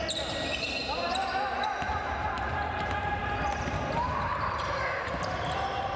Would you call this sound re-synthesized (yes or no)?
yes